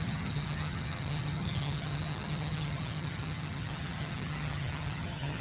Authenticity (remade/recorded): remade